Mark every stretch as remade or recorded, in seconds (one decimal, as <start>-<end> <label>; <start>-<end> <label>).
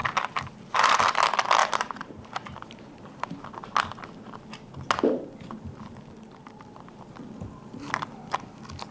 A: 0.0-1.1 remade; 1.1-1.6 recorded; 1.6-3.2 remade; 3.2-8.9 recorded